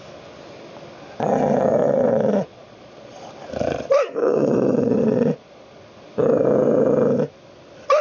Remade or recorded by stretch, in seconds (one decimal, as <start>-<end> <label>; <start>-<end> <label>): 0.0-1.8 recorded; 1.8-3.3 remade; 3.3-4.2 recorded; 4.2-5.8 remade; 5.8-8.0 recorded